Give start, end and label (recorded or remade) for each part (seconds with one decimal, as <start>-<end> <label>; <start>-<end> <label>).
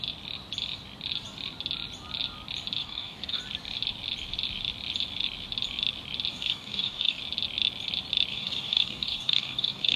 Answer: 0.0-2.8 recorded; 2.8-3.4 remade; 3.4-6.3 recorded; 6.3-7.2 remade; 7.2-8.3 recorded; 8.3-10.0 remade